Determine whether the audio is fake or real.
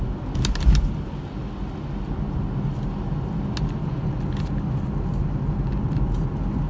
real